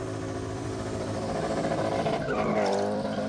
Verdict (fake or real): fake